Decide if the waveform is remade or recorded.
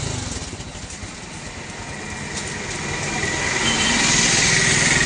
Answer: recorded